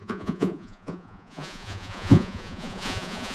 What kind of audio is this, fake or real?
fake